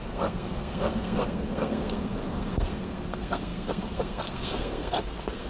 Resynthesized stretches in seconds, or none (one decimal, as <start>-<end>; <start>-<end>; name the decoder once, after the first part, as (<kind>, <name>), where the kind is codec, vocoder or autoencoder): 0.0-5.5 (codec, SNAC)